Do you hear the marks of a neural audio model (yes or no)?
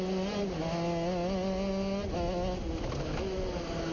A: no